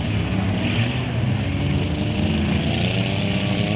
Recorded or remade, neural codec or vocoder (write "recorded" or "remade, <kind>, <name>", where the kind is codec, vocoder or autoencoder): recorded